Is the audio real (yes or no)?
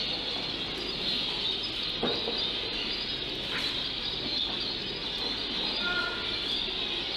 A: yes